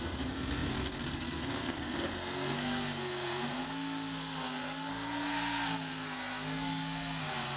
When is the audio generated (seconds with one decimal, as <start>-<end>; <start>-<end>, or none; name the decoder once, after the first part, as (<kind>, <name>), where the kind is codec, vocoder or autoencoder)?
0.0-7.6 (codec, SNAC)